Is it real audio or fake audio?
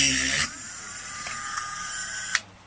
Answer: real